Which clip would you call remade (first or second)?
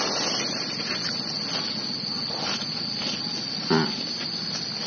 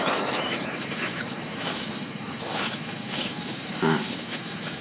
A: second